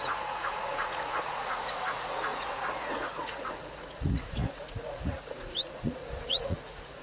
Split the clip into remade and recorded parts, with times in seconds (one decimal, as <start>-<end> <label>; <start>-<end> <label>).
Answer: 0.0-7.0 remade